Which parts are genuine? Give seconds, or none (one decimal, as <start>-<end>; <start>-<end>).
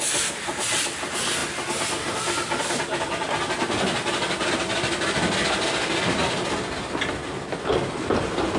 0.0-8.6